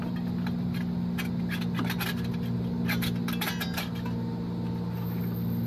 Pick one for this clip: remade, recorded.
recorded